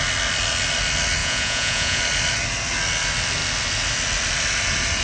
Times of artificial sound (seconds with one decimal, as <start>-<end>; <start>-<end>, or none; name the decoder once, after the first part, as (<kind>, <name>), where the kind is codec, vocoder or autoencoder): 1.2-2.0 (vocoder, Vocos)